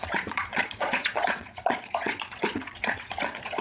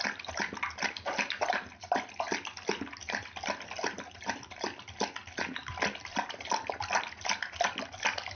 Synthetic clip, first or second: first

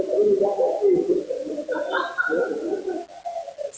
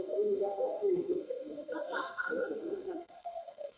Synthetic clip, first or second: second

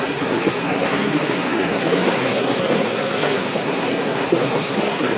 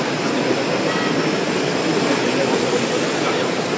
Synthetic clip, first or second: first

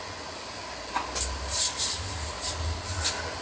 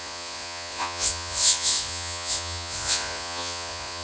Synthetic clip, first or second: second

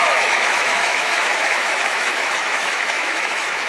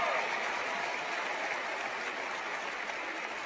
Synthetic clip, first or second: first